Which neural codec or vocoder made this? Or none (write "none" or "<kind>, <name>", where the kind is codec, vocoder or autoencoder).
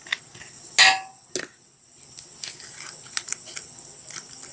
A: none